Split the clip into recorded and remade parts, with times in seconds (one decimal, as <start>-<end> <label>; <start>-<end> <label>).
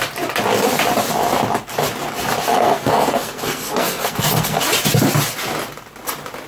0.0-2.5 recorded; 2.5-4.6 remade; 4.6-6.5 recorded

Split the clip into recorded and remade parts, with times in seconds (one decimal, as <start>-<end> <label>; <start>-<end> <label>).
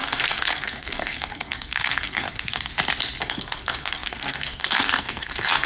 0.0-2.7 remade; 2.7-3.2 recorded; 3.2-5.7 remade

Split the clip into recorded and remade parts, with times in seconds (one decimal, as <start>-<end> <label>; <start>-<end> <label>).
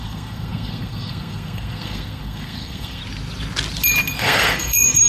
0.0-3.0 remade; 3.0-4.1 recorded; 4.1-5.1 remade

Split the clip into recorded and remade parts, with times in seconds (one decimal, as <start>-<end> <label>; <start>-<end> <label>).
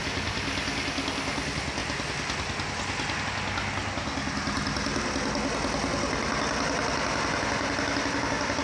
0.0-8.6 recorded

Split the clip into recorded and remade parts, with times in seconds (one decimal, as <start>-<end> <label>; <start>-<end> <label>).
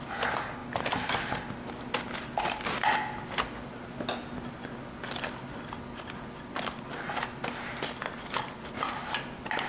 0.0-9.7 recorded